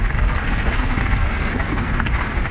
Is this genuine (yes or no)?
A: no